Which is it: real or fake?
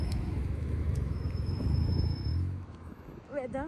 fake